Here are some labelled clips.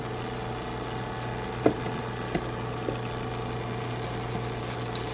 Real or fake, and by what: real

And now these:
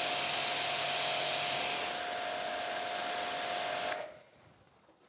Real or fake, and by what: real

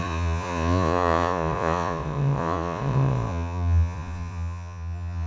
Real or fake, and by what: fake, vocoder, Vocos